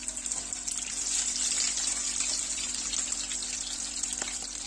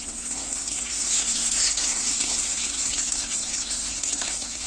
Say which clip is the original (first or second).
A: first